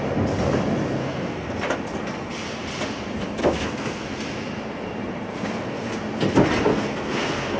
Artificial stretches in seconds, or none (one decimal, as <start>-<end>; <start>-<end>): 1.0-1.6; 3.4-4.2; 5.3-6.0; 6.7-7.6